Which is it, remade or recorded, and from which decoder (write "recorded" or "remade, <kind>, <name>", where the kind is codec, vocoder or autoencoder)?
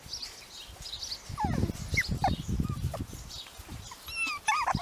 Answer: recorded